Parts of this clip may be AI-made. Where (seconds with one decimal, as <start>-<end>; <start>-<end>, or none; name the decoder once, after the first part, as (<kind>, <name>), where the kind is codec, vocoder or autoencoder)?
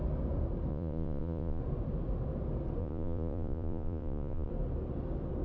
0.7-1.6 (vocoder, Vocos); 2.8-4.5